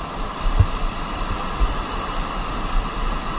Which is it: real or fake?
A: fake